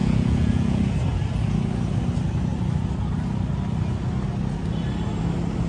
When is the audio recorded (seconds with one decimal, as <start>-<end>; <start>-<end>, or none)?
0.8-5.7